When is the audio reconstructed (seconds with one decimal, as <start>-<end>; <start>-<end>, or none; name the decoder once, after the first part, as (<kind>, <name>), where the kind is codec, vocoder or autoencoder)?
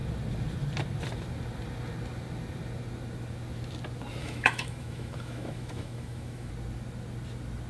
4.2-6.5 (autoencoder, DAC-VAE)